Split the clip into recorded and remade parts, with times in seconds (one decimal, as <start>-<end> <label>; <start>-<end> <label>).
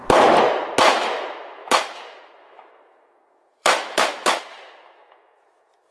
0.0-0.9 recorded; 0.9-5.9 remade